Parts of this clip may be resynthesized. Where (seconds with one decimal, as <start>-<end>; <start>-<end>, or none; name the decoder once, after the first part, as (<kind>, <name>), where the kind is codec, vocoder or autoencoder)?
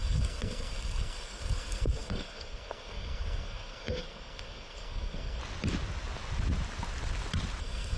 0.0-5.4 (codec, SNAC); 7.6-8.0